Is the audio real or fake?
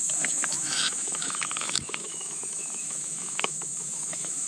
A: fake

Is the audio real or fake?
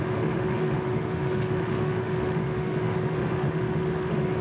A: fake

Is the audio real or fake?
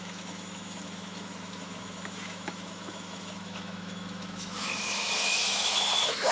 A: fake